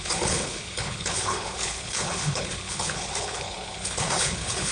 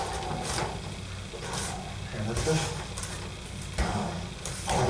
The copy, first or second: first